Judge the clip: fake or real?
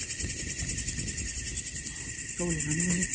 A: real